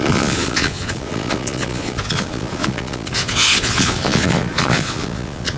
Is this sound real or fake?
fake